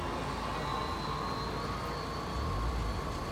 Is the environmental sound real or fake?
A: real